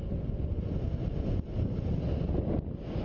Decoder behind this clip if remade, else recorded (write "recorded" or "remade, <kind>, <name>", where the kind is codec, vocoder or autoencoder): recorded